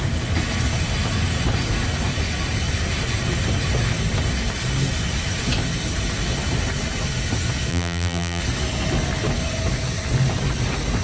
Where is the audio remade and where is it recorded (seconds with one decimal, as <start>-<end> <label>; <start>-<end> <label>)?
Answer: 0.0-7.7 recorded; 7.7-8.4 remade; 8.4-11.0 recorded